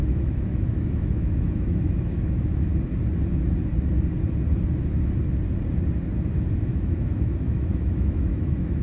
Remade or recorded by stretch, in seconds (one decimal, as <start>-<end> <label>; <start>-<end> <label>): 0.0-2.7 remade; 2.7-6.5 recorded; 6.5-8.8 remade